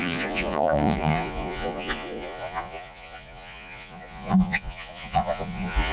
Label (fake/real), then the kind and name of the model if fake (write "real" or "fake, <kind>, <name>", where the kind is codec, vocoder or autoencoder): fake, vocoder, Vocos